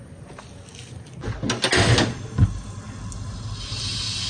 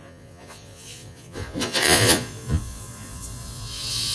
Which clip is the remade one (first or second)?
second